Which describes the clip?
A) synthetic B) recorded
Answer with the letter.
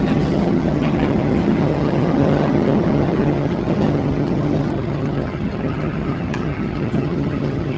A